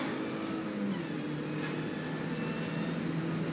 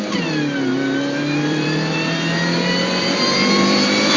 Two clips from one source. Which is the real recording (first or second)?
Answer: first